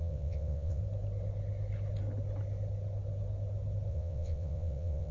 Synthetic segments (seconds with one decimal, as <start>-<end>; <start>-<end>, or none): 0.0-0.8; 3.9-5.1